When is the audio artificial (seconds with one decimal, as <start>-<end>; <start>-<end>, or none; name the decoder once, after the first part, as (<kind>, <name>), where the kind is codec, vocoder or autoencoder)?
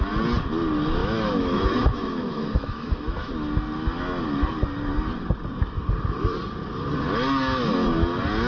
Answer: 1.0-3.3 (autoencoder, DAC-VAE)